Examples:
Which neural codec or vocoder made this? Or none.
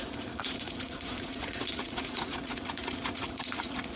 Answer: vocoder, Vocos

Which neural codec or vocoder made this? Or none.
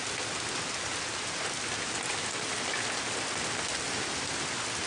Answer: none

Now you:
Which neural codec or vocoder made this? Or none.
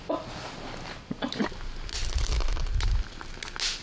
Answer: none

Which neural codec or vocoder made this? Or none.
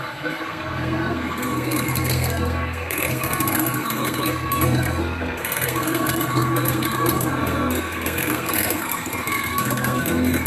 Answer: codec, SNAC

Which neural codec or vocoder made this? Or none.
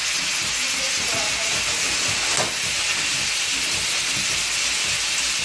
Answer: none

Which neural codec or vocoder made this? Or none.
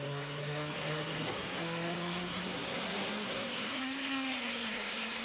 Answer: codec, SNAC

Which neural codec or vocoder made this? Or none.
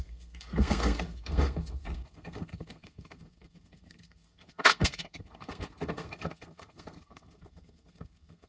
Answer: codec, SNAC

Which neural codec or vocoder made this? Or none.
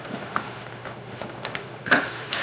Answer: autoencoder, DAC-VAE